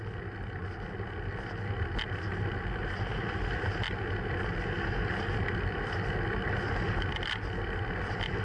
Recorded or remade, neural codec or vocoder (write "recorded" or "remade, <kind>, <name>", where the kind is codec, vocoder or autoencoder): recorded